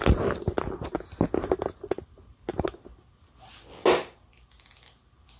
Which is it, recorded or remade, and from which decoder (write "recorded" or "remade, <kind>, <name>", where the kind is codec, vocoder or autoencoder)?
recorded